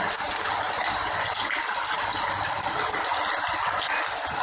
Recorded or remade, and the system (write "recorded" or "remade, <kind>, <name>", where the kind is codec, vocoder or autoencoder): recorded